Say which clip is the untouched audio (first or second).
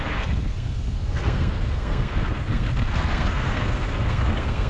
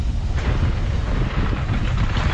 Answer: second